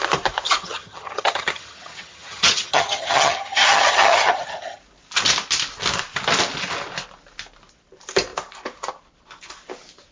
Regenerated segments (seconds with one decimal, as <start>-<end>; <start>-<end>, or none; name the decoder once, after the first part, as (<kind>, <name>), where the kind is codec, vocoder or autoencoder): 0.6-4.8 (vocoder, HiFi-GAN)